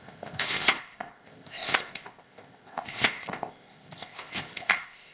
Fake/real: fake